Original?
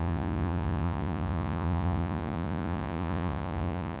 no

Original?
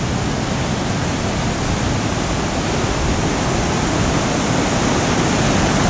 yes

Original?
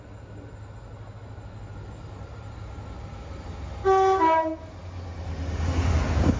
yes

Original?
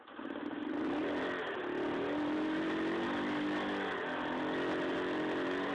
yes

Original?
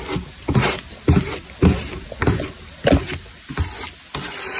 yes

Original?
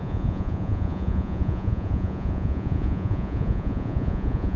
no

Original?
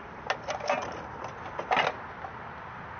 yes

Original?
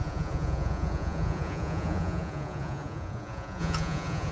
no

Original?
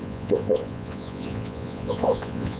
no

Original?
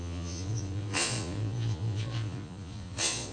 no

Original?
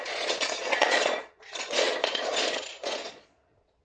no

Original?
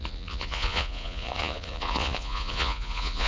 no